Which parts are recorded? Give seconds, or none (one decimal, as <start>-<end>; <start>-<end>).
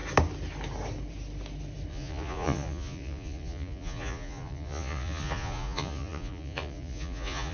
0.0-1.9